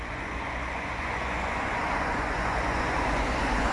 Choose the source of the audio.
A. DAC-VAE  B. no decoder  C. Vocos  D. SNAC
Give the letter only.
C